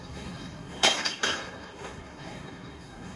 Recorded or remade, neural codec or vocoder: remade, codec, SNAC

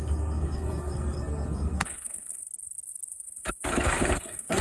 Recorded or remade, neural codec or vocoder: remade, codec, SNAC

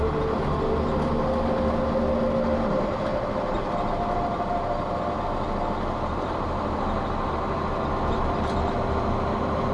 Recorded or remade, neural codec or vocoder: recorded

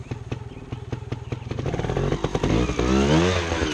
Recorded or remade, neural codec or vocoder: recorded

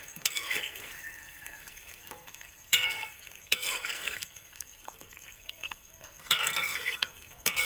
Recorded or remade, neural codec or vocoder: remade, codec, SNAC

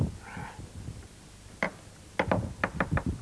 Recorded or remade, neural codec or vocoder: recorded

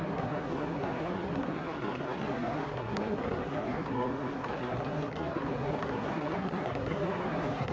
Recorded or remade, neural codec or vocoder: remade, codec, SNAC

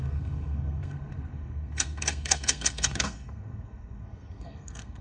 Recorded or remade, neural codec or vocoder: remade, codec, SNAC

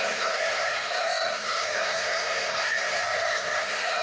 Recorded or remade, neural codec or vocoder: remade, codec, SNAC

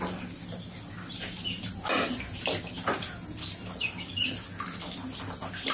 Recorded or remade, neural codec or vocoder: recorded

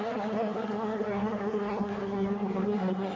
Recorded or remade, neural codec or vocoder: remade, codec, SNAC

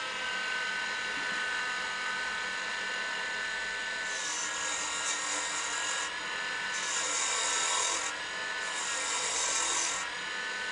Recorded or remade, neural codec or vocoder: recorded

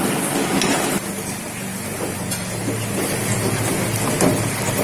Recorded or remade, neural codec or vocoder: recorded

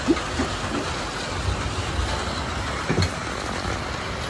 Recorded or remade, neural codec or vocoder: recorded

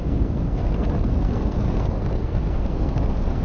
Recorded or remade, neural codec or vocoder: remade, codec, SNAC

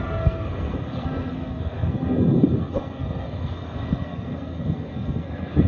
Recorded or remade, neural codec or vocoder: remade, codec, SNAC